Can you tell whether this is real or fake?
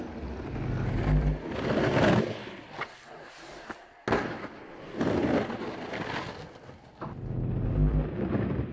real